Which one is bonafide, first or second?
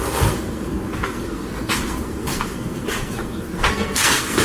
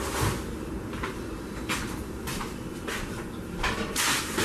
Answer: second